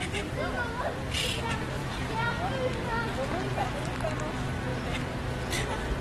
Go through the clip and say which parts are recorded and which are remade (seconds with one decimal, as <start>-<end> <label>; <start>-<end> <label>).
0.0-1.8 recorded; 1.8-2.3 remade; 2.3-6.0 recorded